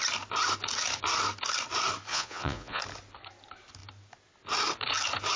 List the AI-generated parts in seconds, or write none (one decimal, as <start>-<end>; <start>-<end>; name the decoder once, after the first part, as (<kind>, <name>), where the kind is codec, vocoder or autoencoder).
2.1-2.8 (vocoder, Vocos)